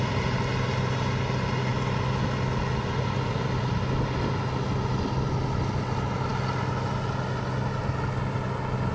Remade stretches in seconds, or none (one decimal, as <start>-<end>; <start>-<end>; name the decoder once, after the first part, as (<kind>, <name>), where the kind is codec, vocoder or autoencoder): none